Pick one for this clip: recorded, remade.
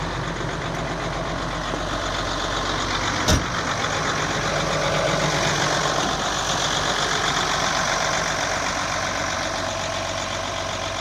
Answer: recorded